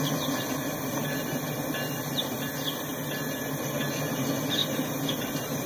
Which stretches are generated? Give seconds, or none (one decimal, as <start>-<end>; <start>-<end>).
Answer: none